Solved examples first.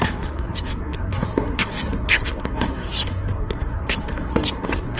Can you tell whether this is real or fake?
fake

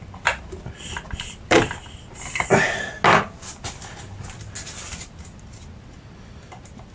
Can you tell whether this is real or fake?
real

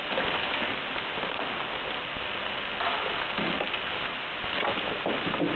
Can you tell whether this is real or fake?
real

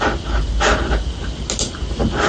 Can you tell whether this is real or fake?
real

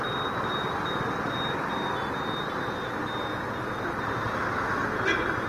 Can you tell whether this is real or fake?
real